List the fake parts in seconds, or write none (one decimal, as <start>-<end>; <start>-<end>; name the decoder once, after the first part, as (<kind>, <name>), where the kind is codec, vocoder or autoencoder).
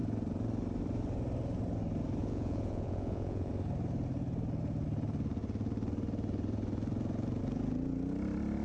2.2-3.5 (vocoder, Vocos)